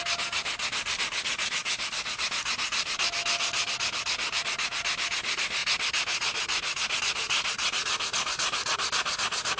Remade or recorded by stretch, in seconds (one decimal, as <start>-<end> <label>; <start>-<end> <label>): 0.0-9.6 recorded